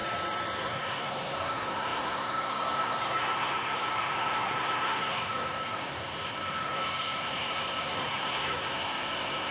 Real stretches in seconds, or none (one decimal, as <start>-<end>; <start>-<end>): 0.0-0.6